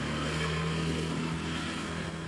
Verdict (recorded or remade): remade